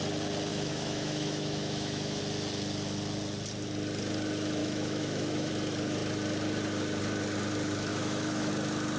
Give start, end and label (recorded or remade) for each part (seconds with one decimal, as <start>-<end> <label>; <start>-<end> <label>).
0.0-0.5 recorded; 0.5-2.2 remade; 2.2-4.6 recorded; 4.6-5.5 remade; 5.5-7.9 recorded; 7.9-8.5 remade; 8.5-9.0 recorded